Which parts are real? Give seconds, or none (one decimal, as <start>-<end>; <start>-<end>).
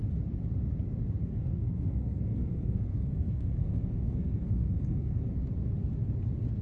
0.0-1.2; 5.2-6.6